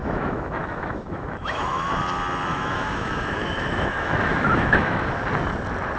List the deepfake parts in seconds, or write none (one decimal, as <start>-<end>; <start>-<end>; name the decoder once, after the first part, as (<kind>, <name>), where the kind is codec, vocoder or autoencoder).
0.0-1.9 (autoencoder, DAC-VAE); 2.5-5.2